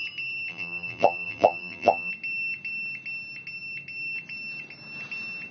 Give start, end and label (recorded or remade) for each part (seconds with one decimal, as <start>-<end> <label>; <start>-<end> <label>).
0.0-0.5 recorded; 0.5-2.1 remade; 2.1-5.5 recorded